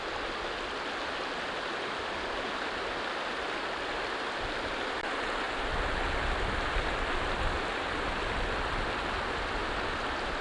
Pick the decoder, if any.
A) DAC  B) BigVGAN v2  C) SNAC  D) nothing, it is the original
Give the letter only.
D